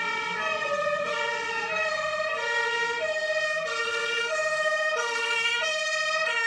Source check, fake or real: fake